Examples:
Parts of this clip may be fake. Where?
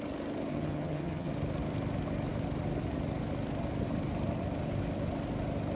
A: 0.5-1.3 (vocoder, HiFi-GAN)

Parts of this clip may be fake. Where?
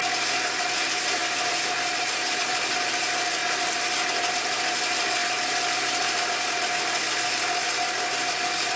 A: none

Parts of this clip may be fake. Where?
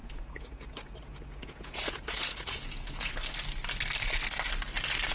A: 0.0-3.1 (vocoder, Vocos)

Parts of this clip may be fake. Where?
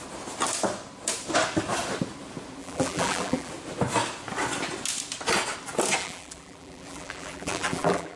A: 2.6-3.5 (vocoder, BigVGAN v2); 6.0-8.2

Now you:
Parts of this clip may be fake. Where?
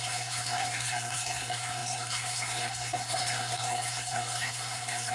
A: 0.0-5.1 (codec, SNAC)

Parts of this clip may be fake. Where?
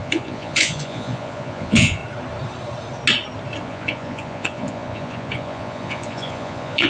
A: 0.0-2.0 (vocoder, Vocos); 3.6-6.9